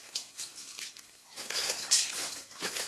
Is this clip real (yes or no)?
no